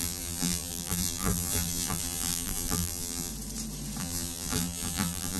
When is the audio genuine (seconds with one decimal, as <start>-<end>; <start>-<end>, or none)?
3.3-4.0